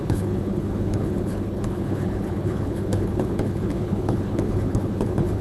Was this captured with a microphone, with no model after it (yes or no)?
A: no